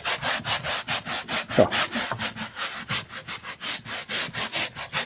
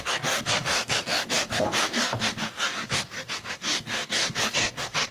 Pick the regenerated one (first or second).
second